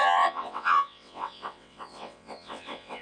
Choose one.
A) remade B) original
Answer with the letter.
A